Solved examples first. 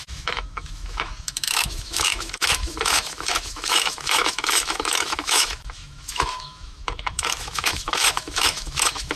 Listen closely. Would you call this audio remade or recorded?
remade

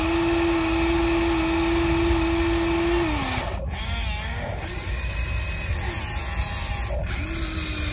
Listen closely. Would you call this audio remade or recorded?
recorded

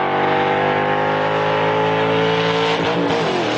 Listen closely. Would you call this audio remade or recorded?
recorded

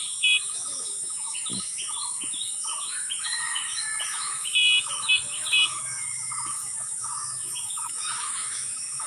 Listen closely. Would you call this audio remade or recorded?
remade